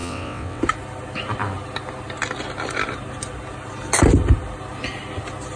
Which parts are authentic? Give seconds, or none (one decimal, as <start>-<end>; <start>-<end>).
0.6-5.6